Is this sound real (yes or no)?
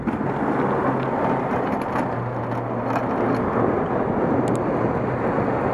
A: yes